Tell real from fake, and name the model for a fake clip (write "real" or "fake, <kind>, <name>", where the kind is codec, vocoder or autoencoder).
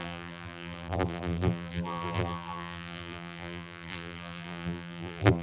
fake, vocoder, BigVGAN v2